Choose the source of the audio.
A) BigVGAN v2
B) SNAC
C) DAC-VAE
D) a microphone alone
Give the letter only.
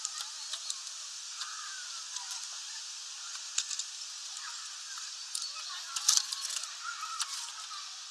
D